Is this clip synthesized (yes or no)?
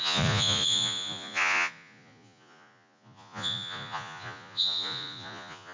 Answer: yes